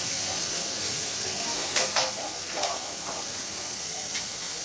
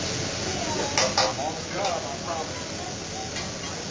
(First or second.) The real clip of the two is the second